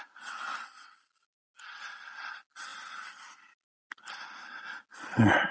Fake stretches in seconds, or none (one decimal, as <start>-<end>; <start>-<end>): none

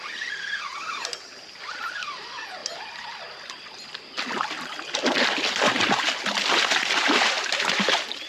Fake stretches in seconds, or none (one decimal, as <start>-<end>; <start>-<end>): none

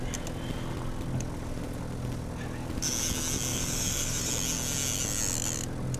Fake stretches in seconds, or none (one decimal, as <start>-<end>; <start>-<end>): 3.5-4.3

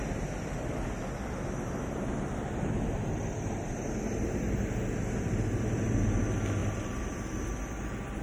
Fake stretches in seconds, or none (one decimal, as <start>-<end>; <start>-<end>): 6.6-7.4